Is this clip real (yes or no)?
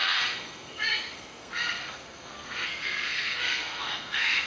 no